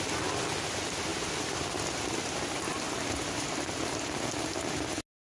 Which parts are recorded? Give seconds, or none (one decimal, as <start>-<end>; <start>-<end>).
0.0-5.3